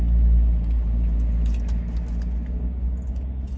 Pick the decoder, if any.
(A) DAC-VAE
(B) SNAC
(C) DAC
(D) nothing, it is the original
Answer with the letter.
D